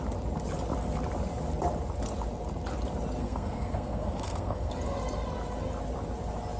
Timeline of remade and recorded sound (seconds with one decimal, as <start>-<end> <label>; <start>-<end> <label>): 0.0-3.2 recorded; 3.2-4.7 remade; 4.7-6.6 recorded